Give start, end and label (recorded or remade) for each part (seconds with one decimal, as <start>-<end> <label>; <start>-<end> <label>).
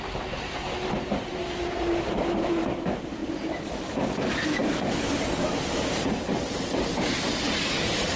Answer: 0.0-8.2 remade